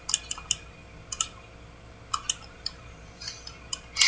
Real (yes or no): yes